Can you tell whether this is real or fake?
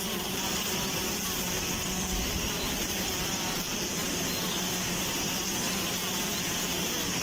real